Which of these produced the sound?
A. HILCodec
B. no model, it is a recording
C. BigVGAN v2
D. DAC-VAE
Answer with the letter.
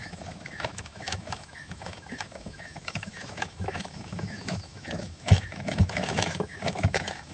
D